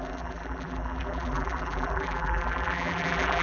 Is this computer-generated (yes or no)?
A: yes